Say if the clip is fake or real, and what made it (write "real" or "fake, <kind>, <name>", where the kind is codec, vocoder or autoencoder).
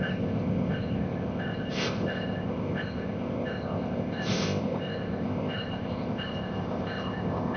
fake, codec, ZipCodec